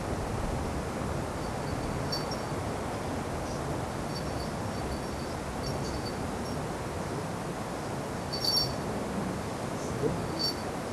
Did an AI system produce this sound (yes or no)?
no